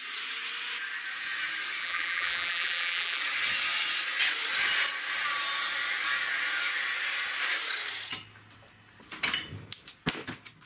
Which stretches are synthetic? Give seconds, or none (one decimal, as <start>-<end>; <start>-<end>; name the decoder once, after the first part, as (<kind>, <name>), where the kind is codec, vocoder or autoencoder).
1.8-3.2 (vocoder, BigVGAN v2)